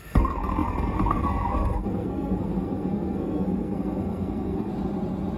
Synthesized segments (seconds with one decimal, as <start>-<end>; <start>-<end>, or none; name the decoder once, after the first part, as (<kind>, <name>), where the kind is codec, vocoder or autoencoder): 0.0-4.7 (codec, SNAC)